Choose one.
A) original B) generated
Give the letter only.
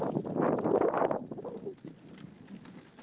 A